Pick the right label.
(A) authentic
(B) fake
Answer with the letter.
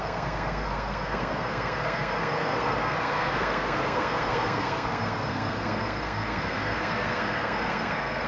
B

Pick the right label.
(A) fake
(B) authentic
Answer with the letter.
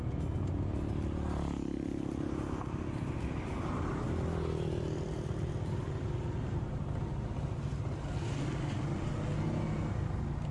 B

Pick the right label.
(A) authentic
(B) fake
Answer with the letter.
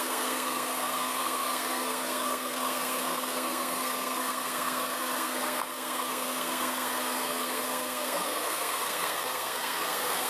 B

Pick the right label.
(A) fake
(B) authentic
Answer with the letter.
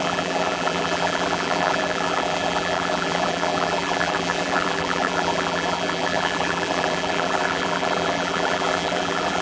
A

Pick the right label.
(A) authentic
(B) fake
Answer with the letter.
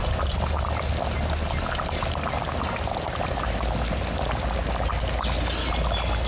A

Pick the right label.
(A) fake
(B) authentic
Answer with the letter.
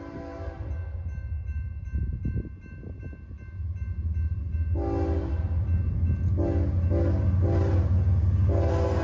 B